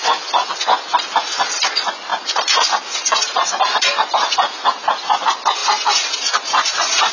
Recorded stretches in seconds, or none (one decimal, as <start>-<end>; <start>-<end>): 0.0-2.1; 4.4-5.6